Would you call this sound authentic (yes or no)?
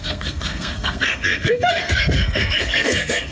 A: no